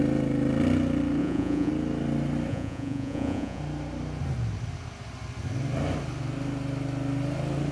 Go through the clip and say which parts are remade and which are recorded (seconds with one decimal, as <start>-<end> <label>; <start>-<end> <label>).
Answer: 0.0-1.2 recorded; 1.2-1.7 remade; 1.7-2.5 recorded; 2.5-3.6 remade; 3.6-7.7 recorded